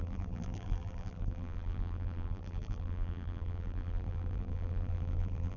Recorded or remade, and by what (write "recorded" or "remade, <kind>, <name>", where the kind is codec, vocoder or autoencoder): remade, vocoder, BigVGAN v2